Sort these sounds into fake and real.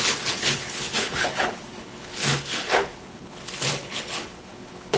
fake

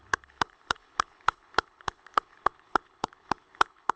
fake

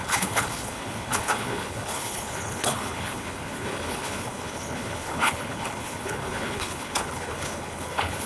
fake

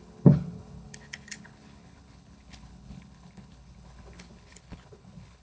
fake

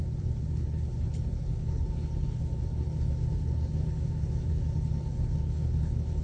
fake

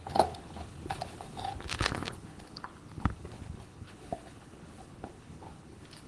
fake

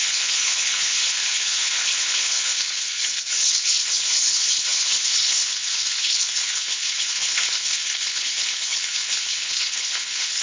fake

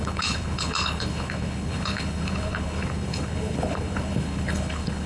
fake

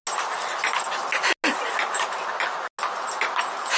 real